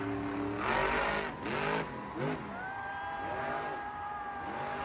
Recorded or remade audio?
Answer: recorded